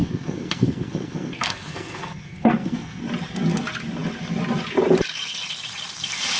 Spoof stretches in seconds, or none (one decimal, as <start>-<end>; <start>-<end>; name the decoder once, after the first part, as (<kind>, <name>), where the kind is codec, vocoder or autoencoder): 0.0-3.0 (codec, SNAC)